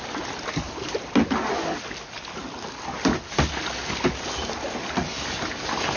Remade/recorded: recorded